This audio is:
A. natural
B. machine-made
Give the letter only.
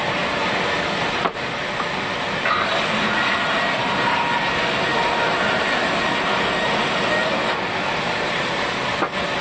B